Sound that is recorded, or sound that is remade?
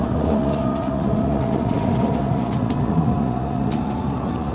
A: remade